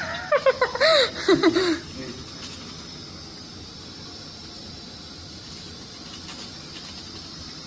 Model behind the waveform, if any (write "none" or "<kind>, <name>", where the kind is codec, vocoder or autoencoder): none